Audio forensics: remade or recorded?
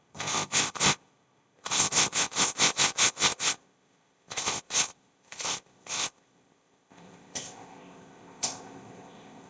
remade